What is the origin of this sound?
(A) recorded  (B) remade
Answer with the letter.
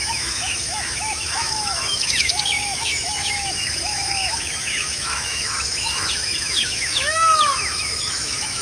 B